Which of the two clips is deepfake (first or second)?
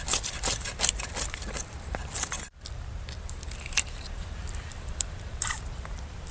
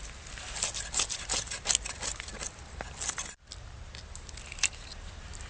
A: first